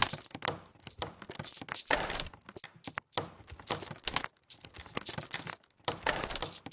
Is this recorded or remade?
recorded